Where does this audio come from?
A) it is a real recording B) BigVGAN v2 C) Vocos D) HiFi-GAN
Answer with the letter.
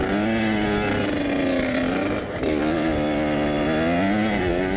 A